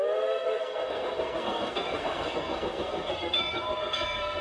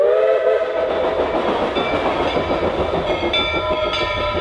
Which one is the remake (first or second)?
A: first